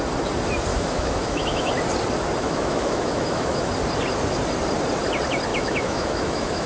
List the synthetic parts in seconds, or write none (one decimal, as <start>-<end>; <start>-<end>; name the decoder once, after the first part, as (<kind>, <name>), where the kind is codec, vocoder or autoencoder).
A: 0.7-1.7 (autoencoder, DAC-VAE); 2.4-3.6; 5.5-6.7

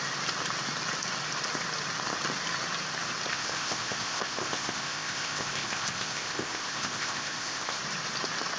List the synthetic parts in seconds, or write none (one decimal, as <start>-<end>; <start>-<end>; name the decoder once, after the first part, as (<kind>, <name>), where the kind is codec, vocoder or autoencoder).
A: 3.3-7.8 (codec, ZipCodec)

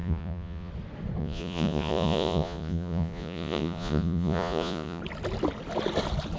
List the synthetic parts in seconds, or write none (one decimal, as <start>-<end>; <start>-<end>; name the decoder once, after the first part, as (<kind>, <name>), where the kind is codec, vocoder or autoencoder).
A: 0.0-0.7 (vocoder, Vocos); 1.2-5.0

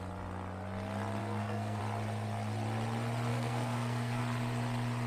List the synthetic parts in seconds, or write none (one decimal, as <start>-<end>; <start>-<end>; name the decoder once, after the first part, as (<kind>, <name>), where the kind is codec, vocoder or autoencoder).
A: 1.2-1.8 (codec, SNAC); 3.3-4.2

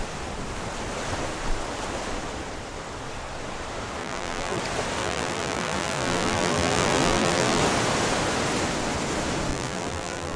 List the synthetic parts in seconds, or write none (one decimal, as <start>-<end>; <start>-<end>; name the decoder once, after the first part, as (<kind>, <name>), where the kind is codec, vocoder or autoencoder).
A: 4.0-4.6 (vocoder, BigVGAN v2); 5.0-7.6; 9.5-10.4

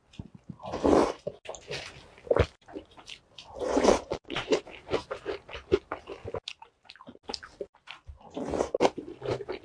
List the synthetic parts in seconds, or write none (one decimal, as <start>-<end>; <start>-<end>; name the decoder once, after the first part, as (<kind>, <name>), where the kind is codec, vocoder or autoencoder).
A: 3.7-4.6 (vocoder, Vocos)

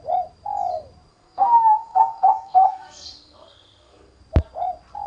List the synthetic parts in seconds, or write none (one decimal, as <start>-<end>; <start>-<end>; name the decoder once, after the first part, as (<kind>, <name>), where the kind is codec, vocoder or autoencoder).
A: 1.1-4.2 (codec, SNAC)

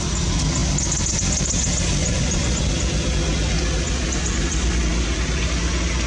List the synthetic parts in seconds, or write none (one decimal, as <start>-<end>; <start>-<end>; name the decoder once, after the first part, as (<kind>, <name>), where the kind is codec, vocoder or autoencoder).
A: 2.0-2.6 (vocoder, Vocos)